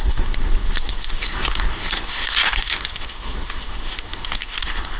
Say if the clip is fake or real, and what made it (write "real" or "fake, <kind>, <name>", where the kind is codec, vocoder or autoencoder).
fake, codec, SNAC